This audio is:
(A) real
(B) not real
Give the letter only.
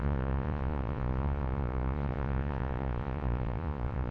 B